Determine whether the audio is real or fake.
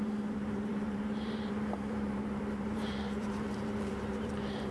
fake